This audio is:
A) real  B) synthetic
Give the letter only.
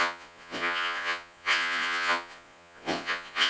B